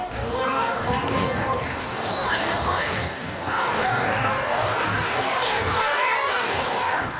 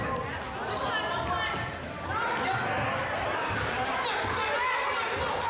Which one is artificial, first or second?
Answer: first